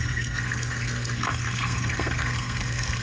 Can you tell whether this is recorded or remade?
remade